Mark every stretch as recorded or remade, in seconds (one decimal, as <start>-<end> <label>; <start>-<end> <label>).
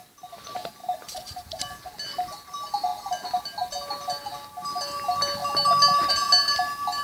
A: 0.0-0.8 recorded; 0.8-1.6 remade; 1.6-7.0 recorded